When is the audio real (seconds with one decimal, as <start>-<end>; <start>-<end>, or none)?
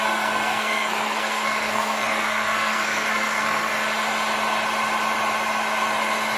3.7-6.4